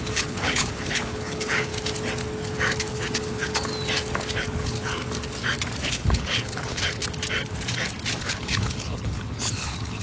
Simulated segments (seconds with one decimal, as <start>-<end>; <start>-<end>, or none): 0.0-1.7; 2.9-3.7; 4.3-5.0; 5.8-7.0; 8.2-10.0